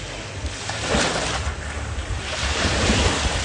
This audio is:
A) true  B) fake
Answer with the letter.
A